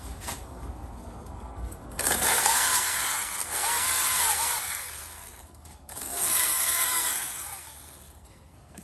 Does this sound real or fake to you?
fake